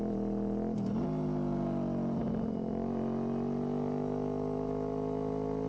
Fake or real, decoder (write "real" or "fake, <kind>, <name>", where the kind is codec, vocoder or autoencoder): real